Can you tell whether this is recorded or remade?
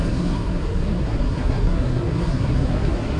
remade